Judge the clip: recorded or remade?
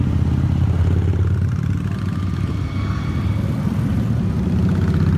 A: recorded